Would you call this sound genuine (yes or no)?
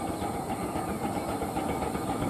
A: yes